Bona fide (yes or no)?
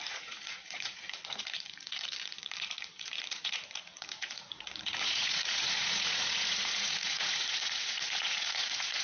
no